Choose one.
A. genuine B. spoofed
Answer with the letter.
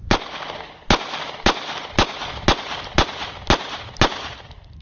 A